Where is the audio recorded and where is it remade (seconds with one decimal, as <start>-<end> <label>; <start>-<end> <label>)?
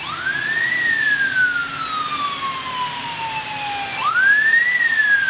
0.0-5.3 recorded